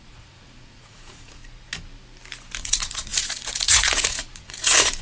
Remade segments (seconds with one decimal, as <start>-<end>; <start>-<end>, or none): 0.0-1.4; 2.6-5.0